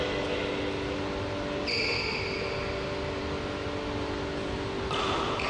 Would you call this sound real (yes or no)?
yes